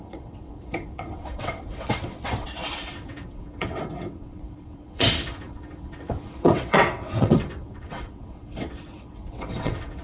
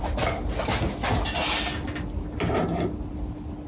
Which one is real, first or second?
second